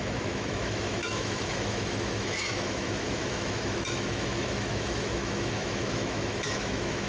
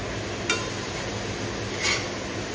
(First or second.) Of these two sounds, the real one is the second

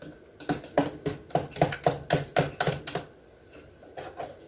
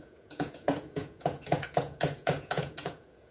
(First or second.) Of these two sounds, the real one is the first